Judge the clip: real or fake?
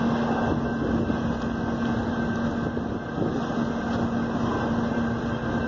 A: real